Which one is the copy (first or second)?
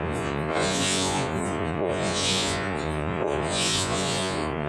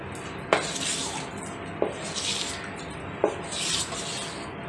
first